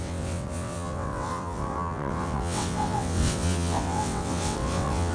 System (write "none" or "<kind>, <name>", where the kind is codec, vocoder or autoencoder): vocoder, WaveNeXt